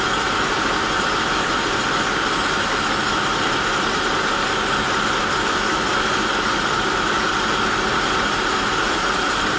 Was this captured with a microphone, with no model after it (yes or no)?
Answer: yes